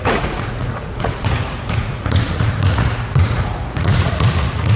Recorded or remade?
remade